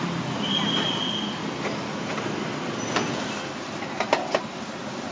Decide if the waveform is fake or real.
real